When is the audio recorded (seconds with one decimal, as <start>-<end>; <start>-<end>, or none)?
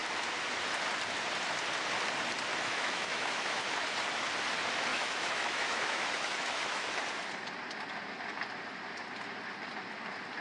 0.0-2.5; 3.6-4.9; 7.0-10.4